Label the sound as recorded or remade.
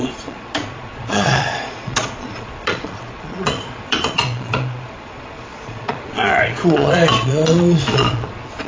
remade